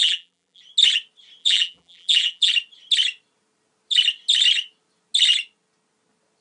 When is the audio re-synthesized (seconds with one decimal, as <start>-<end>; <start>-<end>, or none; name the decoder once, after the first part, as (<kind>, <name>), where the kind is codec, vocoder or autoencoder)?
0.0-0.6 (vocoder, BigVGAN v2); 1.4-2.5